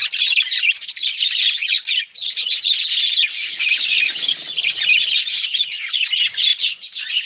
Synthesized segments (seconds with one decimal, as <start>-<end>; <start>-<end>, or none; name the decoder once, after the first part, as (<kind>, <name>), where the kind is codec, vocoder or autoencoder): 1.6-2.3 (vocoder, Vocos); 6.5-7.3